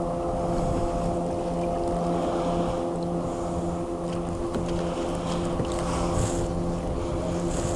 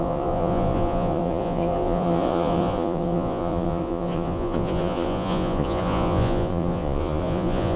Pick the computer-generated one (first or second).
second